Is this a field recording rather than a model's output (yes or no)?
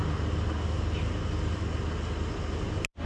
yes